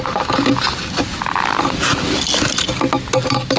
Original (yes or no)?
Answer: yes